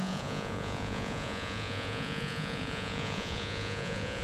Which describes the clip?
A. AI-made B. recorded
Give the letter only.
A